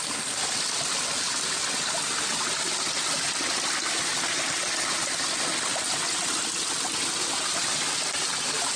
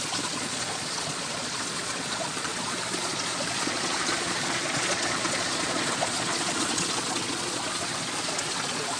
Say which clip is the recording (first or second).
first